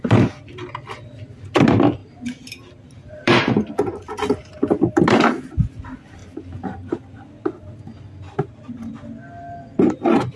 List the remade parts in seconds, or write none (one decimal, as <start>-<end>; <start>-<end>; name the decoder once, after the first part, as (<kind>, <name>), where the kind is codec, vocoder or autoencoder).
2.0-4.0 (vocoder, BigVGAN v2)